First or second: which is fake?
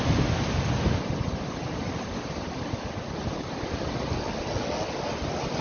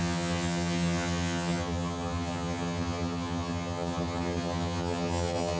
second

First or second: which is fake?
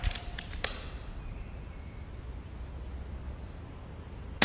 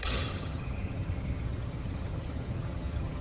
second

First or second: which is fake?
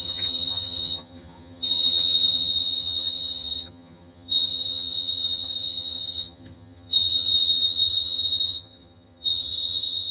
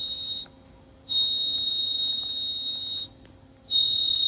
first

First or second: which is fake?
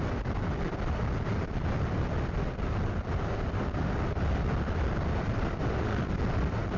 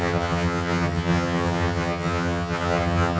second